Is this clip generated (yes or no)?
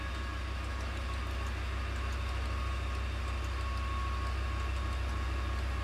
no